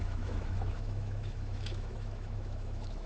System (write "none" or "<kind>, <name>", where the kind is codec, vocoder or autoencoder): autoencoder, DAC-VAE